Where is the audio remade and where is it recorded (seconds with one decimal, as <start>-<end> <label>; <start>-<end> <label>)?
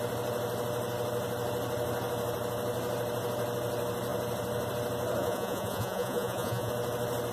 0.0-5.2 recorded; 5.2-6.7 remade; 6.7-7.3 recorded